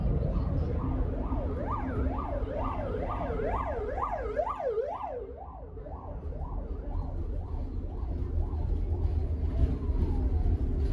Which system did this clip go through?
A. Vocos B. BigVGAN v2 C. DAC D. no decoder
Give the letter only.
D